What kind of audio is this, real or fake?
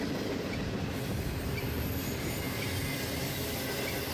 real